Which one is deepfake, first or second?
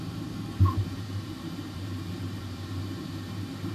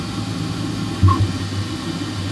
first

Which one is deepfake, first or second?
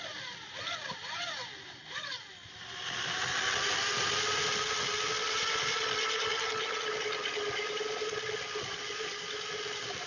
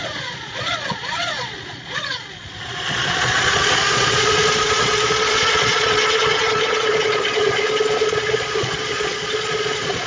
second